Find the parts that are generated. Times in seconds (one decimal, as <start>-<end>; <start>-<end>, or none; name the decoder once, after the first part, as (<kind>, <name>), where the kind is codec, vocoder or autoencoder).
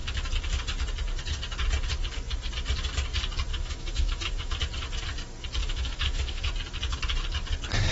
3.5-4.6 (autoencoder, DAC-VAE); 5.6-6.4